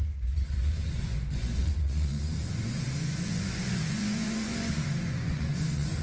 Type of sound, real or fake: fake